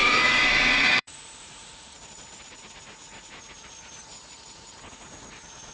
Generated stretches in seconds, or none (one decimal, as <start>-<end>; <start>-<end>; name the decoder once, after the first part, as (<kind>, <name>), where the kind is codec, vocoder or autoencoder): 0.0-5.7 (vocoder, Vocos)